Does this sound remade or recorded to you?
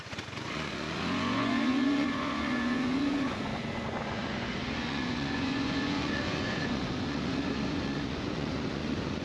remade